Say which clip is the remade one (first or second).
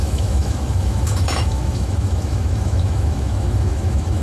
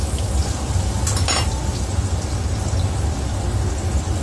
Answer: first